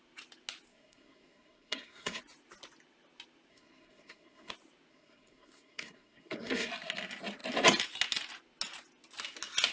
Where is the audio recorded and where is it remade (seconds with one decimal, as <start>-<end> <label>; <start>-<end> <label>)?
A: 0.0-0.7 recorded; 0.7-2.2 remade; 2.2-3.5 recorded; 3.5-4.5 remade; 4.5-4.9 recorded; 4.9-6.7 remade; 6.7-9.7 recorded